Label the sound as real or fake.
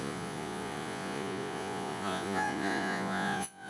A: fake